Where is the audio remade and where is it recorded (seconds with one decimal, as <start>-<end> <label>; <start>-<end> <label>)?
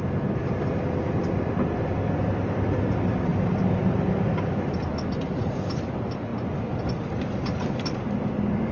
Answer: 0.0-8.7 recorded